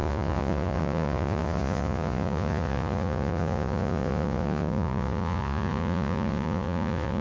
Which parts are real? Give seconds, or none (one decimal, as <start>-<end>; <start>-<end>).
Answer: none